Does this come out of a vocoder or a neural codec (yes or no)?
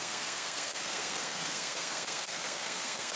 yes